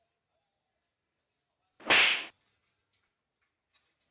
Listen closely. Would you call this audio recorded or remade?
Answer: recorded